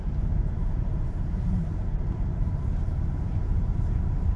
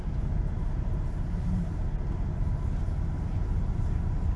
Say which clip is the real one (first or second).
second